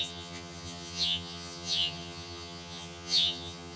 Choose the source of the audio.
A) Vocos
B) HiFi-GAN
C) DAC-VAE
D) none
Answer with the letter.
B